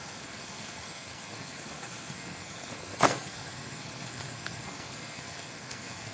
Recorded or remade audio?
remade